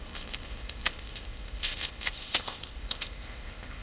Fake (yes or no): yes